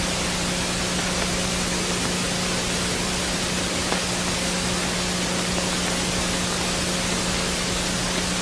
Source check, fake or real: real